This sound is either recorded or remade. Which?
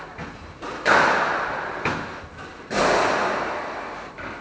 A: remade